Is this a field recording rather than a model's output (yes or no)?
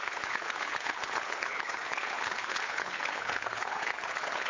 no